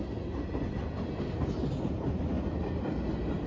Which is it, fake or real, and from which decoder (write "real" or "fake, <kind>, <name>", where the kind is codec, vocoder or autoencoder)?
real